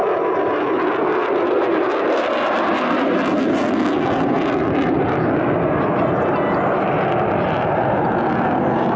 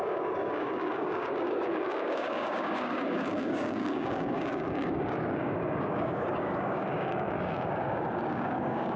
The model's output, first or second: second